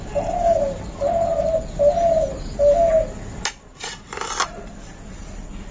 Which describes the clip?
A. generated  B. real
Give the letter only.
B